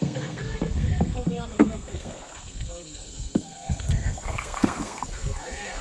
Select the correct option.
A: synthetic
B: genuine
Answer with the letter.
A